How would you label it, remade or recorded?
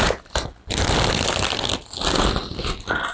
recorded